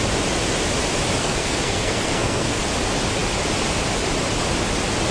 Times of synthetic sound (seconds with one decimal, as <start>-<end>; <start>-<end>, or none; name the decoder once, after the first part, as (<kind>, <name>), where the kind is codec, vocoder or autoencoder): 1.2-2.6 (codec, SNAC)